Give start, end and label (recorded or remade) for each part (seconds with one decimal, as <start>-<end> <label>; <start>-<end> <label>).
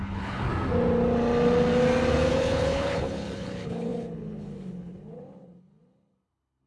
0.0-0.5 remade; 0.5-2.3 recorded; 2.3-6.7 remade